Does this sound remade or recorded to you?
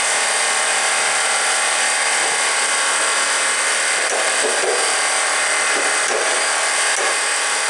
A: recorded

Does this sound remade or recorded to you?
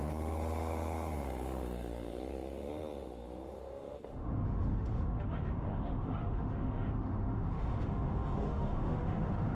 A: remade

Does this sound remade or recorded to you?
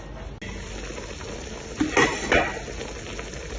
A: recorded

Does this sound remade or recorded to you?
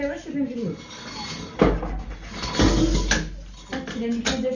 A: recorded